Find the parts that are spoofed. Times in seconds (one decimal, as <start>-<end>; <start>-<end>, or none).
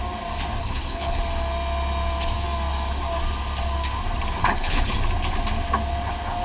0.6-1.2; 4.4-5.0